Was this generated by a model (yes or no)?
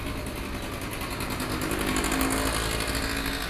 no